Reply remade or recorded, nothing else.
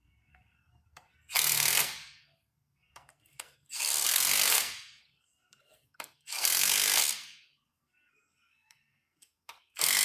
remade